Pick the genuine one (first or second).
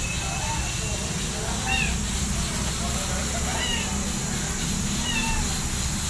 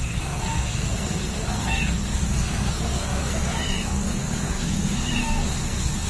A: first